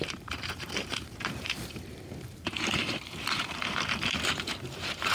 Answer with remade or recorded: remade